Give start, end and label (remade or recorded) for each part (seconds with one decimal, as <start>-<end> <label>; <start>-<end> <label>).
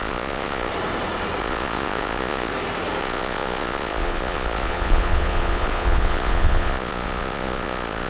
0.0-0.7 remade; 0.7-1.4 recorded; 1.4-2.5 remade; 2.5-3.0 recorded; 3.0-8.1 remade